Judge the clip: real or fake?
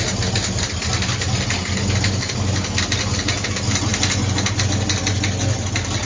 real